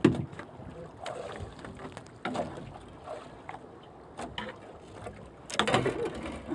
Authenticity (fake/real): real